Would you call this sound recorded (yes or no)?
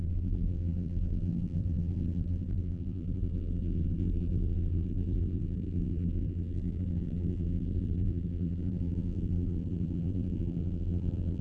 no